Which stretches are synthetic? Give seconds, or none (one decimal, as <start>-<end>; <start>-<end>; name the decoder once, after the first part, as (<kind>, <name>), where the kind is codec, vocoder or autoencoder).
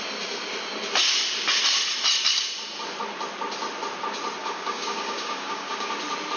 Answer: 4.4-5.9 (codec, DAC)